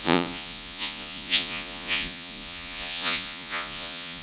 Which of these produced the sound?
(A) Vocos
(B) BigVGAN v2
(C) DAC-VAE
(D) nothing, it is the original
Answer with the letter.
A